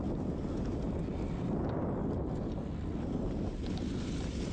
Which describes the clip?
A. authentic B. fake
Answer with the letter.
A